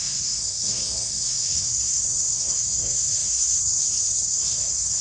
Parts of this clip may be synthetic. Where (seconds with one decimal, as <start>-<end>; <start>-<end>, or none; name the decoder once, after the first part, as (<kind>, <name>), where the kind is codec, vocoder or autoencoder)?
0.0-5.0 (codec, SNAC)